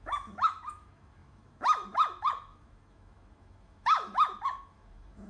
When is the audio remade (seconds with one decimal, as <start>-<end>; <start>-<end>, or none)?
0.0-5.3

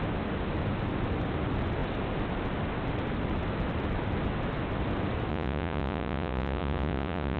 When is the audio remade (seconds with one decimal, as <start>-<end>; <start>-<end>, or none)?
5.3-7.4

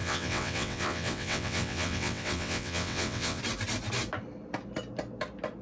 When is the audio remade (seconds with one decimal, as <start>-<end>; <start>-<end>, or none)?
0.0-3.4

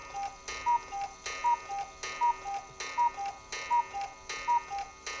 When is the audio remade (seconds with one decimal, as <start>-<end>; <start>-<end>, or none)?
none

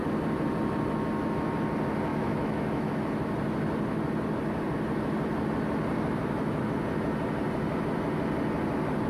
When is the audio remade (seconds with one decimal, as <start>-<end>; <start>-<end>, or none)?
2.1-2.9

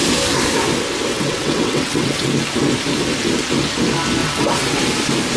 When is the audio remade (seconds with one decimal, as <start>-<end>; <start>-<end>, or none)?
1.1-2.3; 4.2-4.8

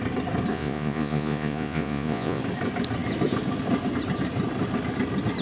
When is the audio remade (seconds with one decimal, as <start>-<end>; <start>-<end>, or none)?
0.5-2.4